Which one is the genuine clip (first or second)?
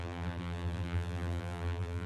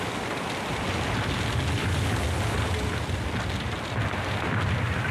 second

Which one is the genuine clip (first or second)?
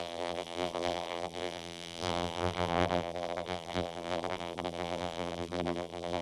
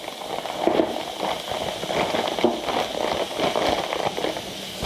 second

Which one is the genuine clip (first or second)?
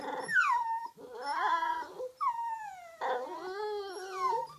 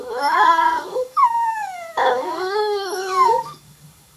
first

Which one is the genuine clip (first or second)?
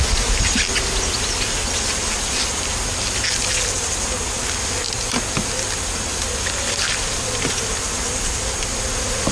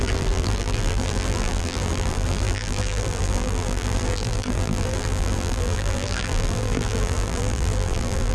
first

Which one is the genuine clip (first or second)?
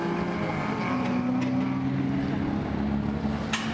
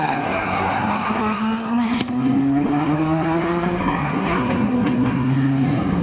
first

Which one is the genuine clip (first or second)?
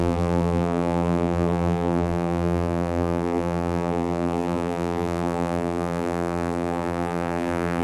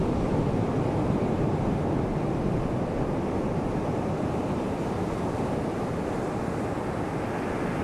second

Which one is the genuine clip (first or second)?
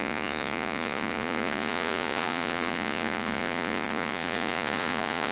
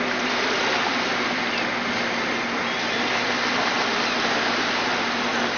second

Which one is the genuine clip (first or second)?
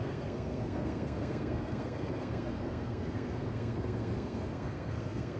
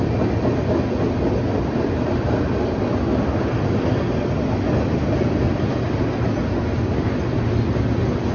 second